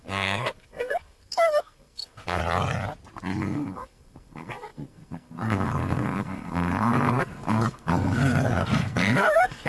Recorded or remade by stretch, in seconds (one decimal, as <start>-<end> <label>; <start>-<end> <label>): 0.0-2.4 remade; 2.4-3.4 recorded; 3.4-9.7 remade